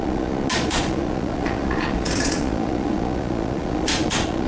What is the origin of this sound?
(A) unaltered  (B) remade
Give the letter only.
B